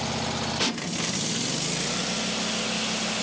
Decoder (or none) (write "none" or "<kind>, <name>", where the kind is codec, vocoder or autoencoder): none